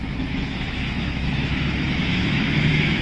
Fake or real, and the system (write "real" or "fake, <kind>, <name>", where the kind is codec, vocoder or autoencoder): fake, autoencoder, DAC-VAE